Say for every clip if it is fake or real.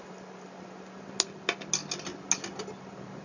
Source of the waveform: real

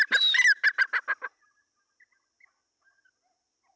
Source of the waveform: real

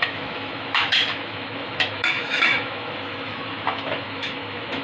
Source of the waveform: fake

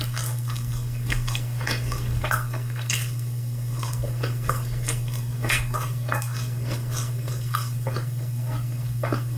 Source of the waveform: fake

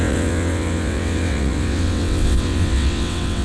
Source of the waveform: fake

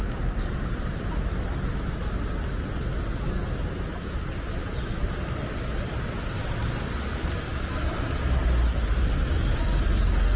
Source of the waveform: real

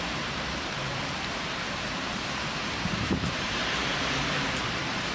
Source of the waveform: fake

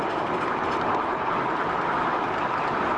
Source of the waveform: real